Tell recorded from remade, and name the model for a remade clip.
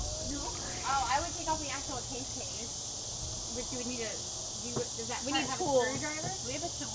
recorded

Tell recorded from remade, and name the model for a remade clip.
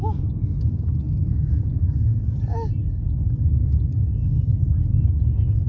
recorded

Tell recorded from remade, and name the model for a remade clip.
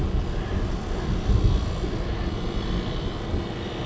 recorded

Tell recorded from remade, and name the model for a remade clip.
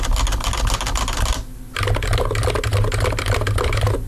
recorded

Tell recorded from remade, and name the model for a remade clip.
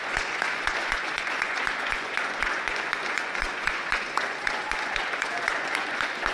remade, vocoder, Vocos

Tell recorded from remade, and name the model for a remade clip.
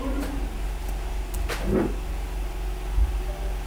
recorded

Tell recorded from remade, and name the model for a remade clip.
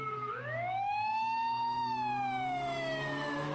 remade, autoencoder, DAC-VAE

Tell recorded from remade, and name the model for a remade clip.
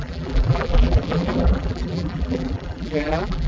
remade, vocoder, BigVGAN v2